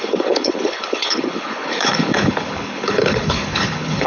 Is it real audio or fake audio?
fake